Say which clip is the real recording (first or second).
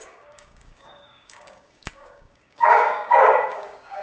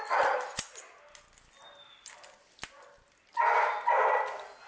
second